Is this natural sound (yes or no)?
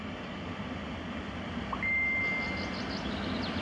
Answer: yes